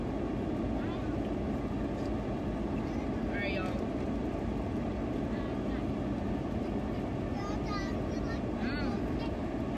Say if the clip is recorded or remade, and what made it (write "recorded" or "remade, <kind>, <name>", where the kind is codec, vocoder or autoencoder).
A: recorded